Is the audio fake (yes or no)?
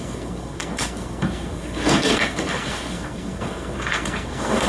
yes